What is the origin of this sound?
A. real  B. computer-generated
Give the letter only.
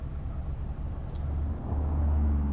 A